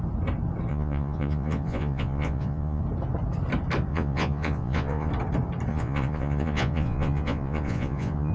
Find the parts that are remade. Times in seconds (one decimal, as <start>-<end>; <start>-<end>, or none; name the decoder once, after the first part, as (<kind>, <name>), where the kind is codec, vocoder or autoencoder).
0.7-2.8 (vocoder, Vocos); 3.9-5.1; 5.7-8.3